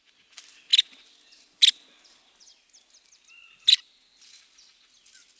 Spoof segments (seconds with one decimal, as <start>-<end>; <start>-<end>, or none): none